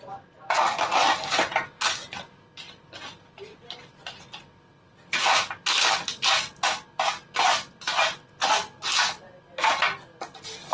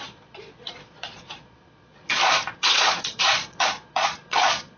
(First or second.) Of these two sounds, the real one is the first